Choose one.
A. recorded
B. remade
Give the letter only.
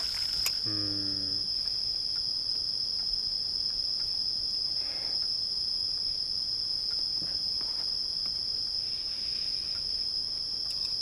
A